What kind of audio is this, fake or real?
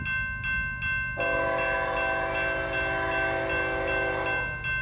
real